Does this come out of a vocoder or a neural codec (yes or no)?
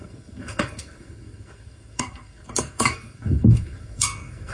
yes